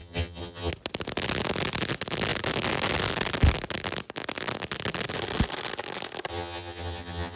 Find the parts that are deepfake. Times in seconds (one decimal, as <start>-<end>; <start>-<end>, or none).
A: 0.0-0.7; 6.3-7.4